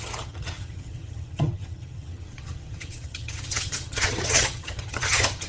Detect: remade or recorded remade